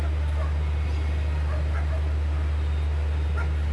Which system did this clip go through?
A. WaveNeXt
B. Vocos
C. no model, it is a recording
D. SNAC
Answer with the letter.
C